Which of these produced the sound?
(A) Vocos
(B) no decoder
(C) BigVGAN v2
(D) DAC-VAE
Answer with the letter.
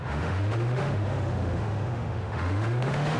D